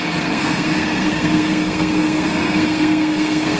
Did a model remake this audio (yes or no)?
yes